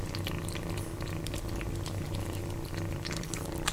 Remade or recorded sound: remade